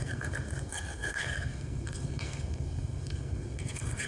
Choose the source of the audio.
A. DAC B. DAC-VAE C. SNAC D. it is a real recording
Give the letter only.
C